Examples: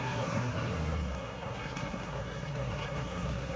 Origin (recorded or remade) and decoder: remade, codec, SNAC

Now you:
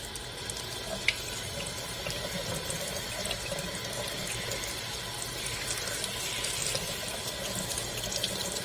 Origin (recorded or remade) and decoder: recorded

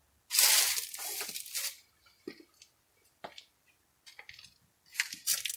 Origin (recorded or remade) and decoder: recorded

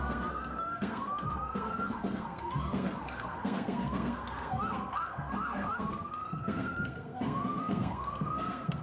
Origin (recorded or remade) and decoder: remade, codec, SNAC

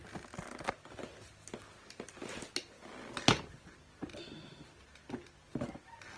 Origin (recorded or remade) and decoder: recorded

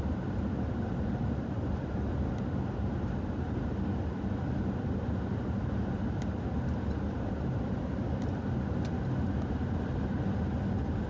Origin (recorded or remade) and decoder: recorded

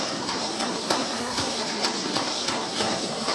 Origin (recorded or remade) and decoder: remade, codec, SNAC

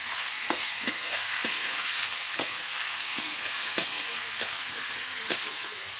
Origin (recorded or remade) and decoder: remade, codec, SNAC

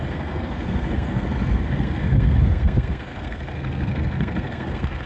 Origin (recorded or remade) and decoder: remade, codec, SNAC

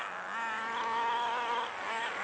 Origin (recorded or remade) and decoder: recorded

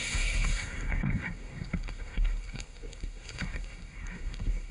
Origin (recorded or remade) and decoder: remade, codec, SNAC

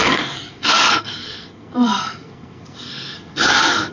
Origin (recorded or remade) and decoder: remade, codec, SNAC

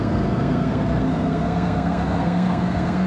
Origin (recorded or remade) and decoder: remade, codec, SNAC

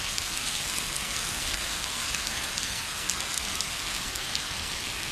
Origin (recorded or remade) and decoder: remade, codec, SNAC